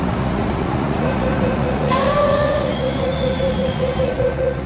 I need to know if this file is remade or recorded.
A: remade